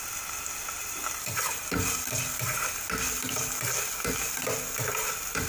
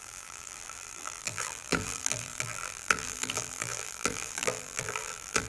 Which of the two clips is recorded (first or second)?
first